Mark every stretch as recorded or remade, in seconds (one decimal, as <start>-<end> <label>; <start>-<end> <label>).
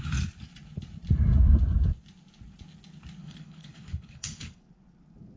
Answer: 0.0-3.2 recorded; 3.2-4.6 remade; 4.6-5.4 recorded